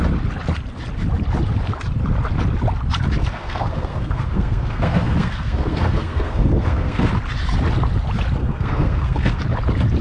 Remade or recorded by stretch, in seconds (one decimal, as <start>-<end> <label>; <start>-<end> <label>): 0.0-3.2 recorded; 3.2-7.1 remade; 7.1-8.4 recorded; 8.4-9.4 remade; 9.4-10.0 recorded